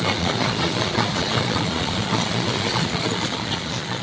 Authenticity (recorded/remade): remade